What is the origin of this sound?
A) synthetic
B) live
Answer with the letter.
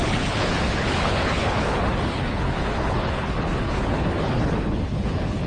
A